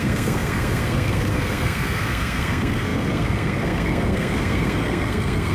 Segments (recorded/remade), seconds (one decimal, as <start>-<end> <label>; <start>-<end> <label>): 0.0-5.5 remade